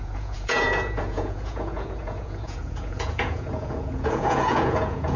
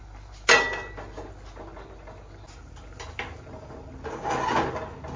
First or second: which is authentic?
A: second